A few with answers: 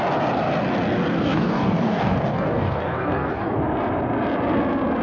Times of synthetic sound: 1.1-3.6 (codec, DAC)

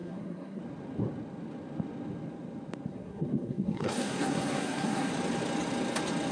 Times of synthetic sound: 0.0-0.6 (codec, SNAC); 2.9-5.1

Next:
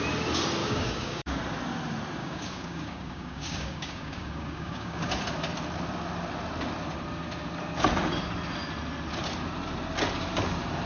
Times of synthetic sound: 0.6-1.4 (codec, DAC); 2.2-5.1

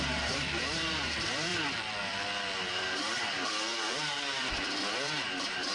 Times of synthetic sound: 0.0-1.5 (vocoder, BigVGAN v2); 2.6-5.7

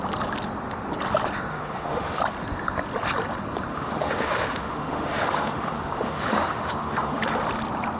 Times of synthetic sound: 1.5-2.2 (autoencoder, DAC-VAE); 3.7-7.2

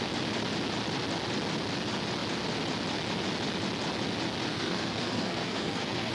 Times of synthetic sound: 4.5-6.1 (codec, SNAC)

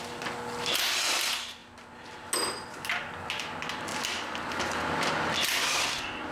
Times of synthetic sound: none